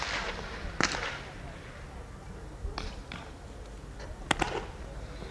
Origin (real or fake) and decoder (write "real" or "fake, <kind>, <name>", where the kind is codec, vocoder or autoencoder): real